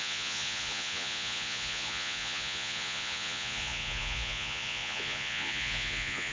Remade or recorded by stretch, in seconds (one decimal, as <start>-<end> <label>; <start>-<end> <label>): 0.0-6.3 remade